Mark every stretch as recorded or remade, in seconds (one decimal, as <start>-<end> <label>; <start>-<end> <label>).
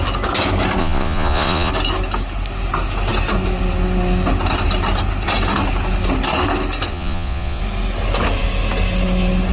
0.0-0.8 recorded; 0.8-1.7 remade; 1.7-6.9 recorded; 6.9-7.6 remade; 7.6-9.5 recorded